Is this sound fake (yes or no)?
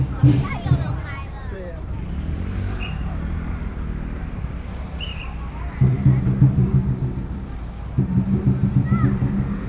yes